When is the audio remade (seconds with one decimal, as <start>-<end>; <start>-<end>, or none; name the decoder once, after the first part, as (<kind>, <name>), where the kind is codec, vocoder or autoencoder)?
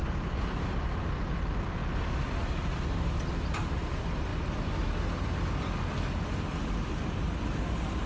none